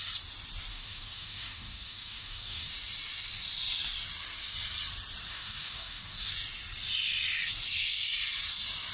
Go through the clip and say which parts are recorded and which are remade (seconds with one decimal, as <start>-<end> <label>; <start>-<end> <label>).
0.0-0.7 recorded; 0.7-2.7 remade; 2.7-5.3 recorded; 5.3-6.3 remade; 6.3-8.9 recorded